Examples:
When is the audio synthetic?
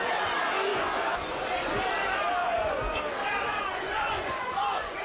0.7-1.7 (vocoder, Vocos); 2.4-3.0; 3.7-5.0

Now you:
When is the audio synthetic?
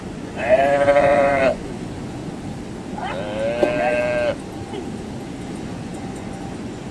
0.0-2.2 (vocoder, Vocos); 5.4-6.9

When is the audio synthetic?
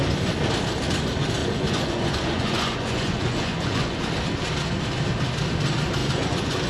1.4-4.0 (vocoder, Vocos); 6.0-6.7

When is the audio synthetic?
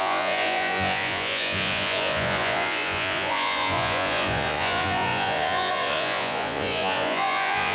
0.0-7.7 (vocoder, Vocos)